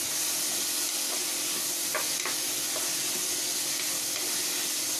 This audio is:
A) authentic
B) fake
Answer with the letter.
A